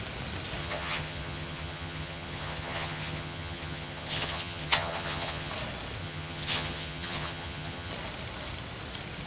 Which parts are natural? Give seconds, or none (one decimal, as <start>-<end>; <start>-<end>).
0.0-0.6; 5.5-6.0; 7.9-9.3